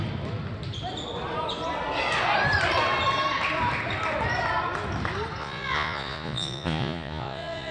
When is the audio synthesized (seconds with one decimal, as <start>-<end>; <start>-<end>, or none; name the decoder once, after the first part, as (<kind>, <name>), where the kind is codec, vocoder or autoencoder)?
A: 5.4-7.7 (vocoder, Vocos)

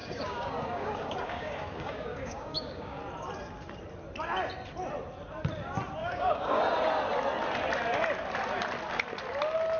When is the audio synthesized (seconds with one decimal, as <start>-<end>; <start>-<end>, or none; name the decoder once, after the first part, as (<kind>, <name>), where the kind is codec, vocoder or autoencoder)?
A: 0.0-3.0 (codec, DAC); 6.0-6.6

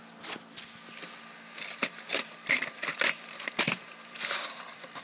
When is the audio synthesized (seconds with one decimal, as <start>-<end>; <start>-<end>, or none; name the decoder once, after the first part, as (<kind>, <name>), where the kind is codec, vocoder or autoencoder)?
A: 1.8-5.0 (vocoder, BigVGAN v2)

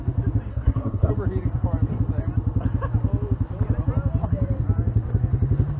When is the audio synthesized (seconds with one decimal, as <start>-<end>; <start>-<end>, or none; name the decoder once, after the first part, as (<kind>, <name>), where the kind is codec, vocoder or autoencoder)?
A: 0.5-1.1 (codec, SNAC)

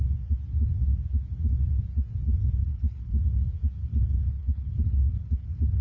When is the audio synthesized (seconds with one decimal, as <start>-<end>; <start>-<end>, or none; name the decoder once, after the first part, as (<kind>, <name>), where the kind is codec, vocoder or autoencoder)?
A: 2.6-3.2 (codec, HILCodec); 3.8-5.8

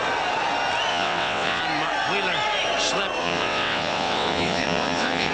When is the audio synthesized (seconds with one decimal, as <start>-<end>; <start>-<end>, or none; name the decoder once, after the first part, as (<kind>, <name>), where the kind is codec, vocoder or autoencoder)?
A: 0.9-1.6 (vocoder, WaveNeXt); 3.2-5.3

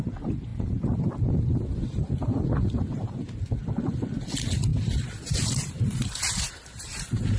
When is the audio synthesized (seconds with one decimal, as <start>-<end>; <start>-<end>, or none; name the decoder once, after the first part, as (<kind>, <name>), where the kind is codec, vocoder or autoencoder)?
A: 0.0-0.5 (vocoder, BigVGAN v2); 4.2-7.4